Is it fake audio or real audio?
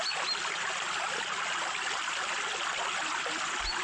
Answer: real